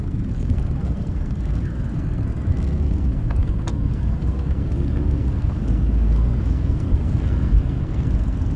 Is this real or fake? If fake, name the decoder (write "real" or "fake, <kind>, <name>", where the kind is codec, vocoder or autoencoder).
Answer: fake, codec, SNAC